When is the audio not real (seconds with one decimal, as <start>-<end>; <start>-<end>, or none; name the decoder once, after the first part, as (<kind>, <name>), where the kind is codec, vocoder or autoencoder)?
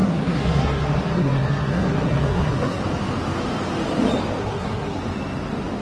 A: 0.0-2.8 (codec, SNAC); 4.4-5.0